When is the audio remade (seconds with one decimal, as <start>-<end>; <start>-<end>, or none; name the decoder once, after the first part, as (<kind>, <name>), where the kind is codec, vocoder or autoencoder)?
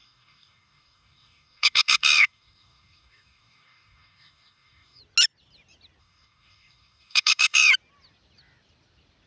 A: 0.0-5.0 (codec, DAC); 6.0-7.7